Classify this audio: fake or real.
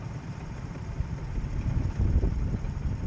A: fake